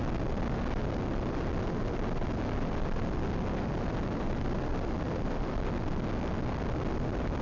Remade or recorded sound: recorded